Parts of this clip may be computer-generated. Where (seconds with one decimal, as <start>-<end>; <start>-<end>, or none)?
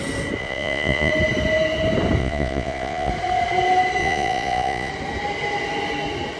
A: 0.4-1.1; 2.2-3.1; 4.0-4.9